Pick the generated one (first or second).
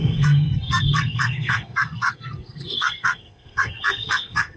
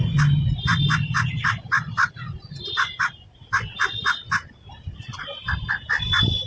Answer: first